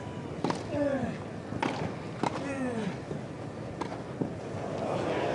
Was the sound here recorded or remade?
recorded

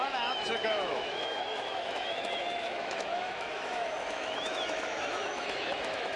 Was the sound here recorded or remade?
remade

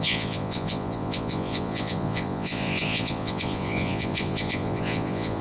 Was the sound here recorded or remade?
remade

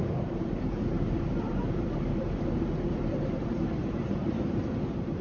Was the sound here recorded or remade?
remade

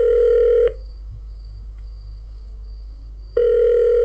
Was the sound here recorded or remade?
remade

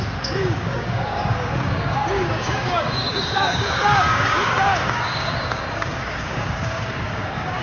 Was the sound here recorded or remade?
remade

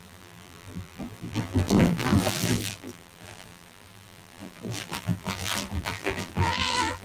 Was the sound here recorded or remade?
remade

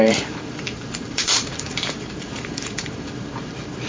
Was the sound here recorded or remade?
remade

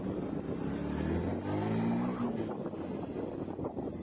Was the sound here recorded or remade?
recorded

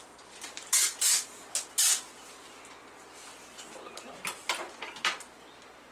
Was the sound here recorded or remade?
recorded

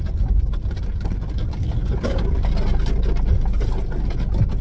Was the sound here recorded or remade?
recorded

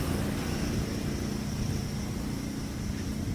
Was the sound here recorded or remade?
recorded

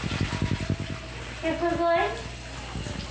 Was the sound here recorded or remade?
recorded